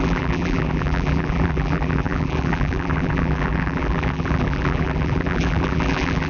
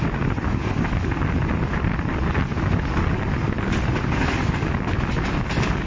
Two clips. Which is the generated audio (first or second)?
first